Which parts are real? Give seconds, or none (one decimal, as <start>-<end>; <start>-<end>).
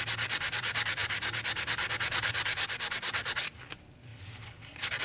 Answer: 1.0-1.9; 4.1-5.0